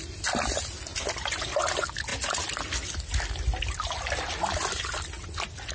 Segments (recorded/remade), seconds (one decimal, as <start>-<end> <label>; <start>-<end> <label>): 0.0-5.7 recorded